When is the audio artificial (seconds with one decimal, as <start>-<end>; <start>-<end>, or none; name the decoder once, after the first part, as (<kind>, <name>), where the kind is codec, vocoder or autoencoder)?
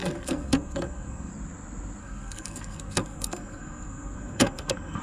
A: 0.0-1.3 (codec, SNAC); 2.0-5.0